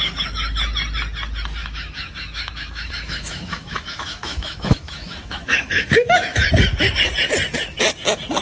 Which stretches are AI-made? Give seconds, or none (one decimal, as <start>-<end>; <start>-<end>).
1.6-6.5